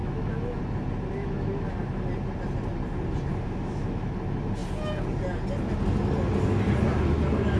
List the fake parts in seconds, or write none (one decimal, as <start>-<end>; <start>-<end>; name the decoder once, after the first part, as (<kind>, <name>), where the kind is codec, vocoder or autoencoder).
0.0-0.6 (autoencoder, DAC-VAE); 1.2-1.7; 3.3-4.1